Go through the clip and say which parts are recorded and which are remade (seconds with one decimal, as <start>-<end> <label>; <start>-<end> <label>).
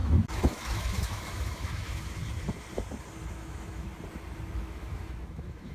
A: 0.0-2.2 remade; 2.2-3.3 recorded; 3.3-3.9 remade; 3.9-4.6 recorded; 4.6-5.7 remade